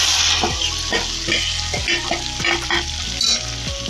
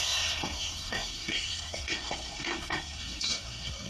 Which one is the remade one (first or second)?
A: second